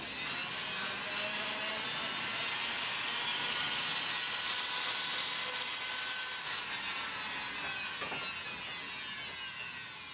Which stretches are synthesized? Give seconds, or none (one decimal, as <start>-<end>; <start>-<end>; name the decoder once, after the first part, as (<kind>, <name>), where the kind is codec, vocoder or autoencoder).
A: none